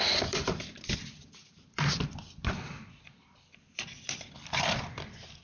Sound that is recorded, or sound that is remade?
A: remade